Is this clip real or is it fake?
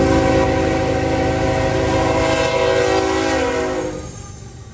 real